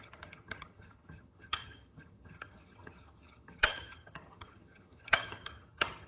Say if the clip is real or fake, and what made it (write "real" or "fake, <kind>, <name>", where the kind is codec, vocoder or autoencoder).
fake, vocoder, HiFi-GAN